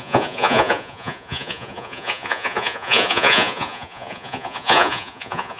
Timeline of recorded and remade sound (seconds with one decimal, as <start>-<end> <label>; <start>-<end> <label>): 0.0-5.6 remade